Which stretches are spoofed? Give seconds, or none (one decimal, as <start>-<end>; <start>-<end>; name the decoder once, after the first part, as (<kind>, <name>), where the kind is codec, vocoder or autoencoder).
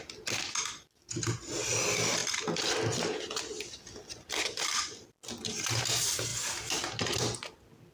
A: none